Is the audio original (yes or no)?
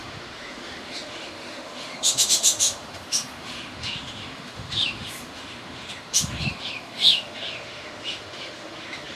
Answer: no